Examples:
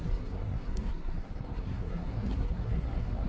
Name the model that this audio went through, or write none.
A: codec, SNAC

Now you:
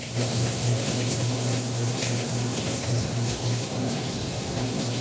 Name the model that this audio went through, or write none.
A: codec, SNAC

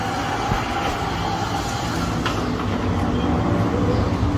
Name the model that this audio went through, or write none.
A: none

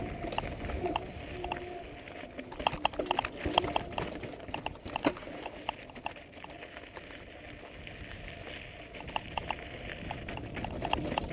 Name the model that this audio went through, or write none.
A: none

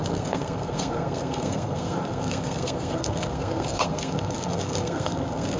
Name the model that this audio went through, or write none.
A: codec, SNAC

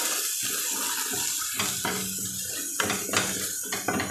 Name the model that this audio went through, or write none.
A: none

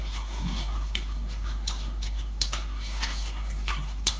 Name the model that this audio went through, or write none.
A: codec, SNAC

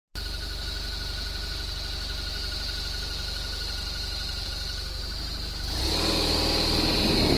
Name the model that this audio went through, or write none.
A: none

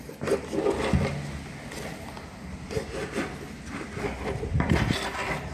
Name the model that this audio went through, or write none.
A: none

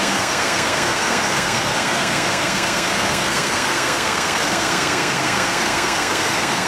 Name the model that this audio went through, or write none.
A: codec, SNAC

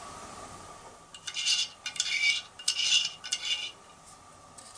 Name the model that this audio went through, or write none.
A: none